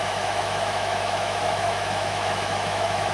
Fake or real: fake